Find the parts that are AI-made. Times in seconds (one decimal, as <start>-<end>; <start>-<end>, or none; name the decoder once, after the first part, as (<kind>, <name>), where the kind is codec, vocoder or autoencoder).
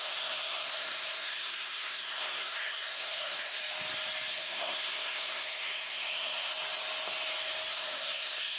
0.0-3.6 (codec, SNAC); 4.3-6.5; 7.7-8.6